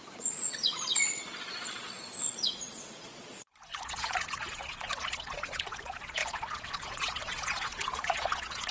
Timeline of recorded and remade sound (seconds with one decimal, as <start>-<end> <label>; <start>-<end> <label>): 0.0-8.7 remade